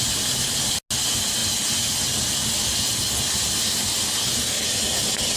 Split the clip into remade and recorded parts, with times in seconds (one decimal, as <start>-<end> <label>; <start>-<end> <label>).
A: 0.0-5.4 recorded

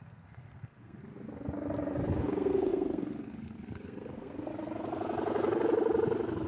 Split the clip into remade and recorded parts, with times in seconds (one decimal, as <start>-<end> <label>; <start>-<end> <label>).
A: 0.0-1.0 remade; 1.0-2.2 recorded; 2.2-4.5 remade; 4.5-6.5 recorded

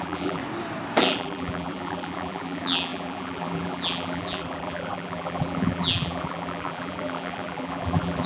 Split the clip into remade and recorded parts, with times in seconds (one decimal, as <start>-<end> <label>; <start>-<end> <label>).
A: 0.0-0.4 remade; 0.4-1.0 recorded; 1.0-8.3 remade

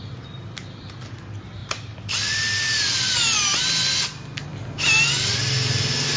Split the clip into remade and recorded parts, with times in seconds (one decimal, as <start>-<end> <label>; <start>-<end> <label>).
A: 0.0-6.2 recorded

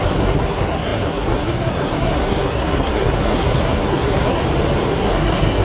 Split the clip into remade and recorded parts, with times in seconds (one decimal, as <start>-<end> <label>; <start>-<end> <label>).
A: 0.0-4.4 remade; 4.4-4.9 recorded; 4.9-5.6 remade

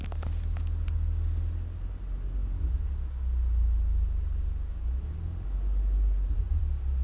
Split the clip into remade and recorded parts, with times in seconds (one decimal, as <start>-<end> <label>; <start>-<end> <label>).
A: 0.0-7.0 recorded

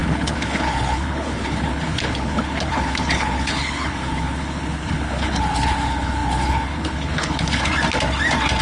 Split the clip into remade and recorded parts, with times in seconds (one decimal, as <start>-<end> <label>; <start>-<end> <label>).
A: 0.0-7.7 remade; 7.7-8.6 recorded